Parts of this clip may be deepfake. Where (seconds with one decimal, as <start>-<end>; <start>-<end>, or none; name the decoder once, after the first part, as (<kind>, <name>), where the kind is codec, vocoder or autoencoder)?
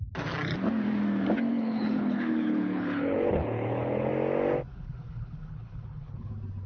1.5-4.1 (codec, HILCodec); 4.7-6.3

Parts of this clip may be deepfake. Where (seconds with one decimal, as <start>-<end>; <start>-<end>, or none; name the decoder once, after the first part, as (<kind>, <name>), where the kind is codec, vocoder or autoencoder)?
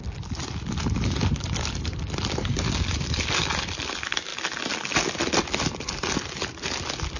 none